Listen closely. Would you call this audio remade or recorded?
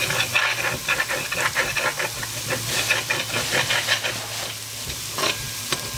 recorded